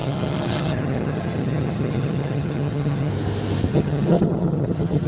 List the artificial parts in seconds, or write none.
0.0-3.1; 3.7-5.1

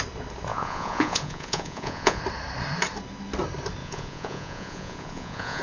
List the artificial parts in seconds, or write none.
0.5-2.2; 3.8-5.6

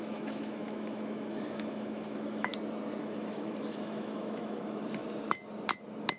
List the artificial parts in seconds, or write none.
0.0-2.5; 3.0-5.0

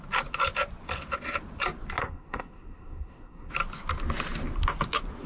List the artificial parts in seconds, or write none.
2.0-3.5

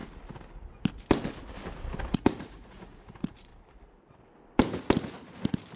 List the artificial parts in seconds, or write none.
2.1-3.5

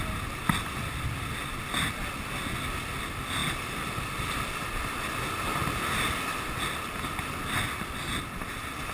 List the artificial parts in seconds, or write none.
none